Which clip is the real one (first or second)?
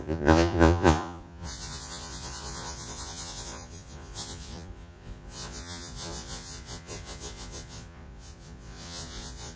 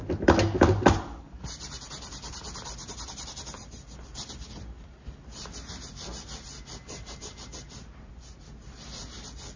second